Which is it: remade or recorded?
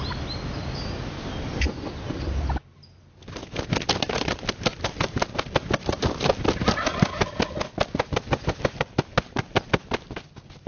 recorded